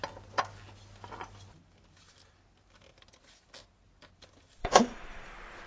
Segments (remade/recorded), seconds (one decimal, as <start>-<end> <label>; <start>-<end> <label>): 0.0-4.6 recorded; 4.6-5.3 remade; 5.3-5.7 recorded